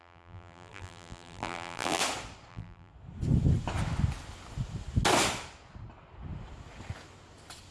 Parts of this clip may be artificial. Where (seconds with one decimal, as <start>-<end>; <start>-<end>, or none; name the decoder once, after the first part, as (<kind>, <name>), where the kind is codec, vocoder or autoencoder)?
0.0-2.0 (vocoder, BigVGAN v2); 2.5-2.9